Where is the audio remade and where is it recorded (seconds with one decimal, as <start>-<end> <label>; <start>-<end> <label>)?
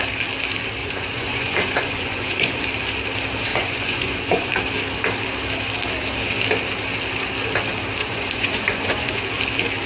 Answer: 0.0-0.8 recorded; 0.8-2.6 remade; 2.6-3.5 recorded; 3.5-4.5 remade; 4.5-8.0 recorded; 8.0-9.2 remade; 9.2-9.9 recorded